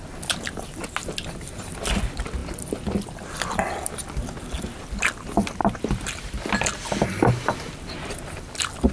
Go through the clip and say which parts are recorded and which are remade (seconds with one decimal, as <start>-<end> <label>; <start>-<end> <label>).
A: 0.0-8.9 recorded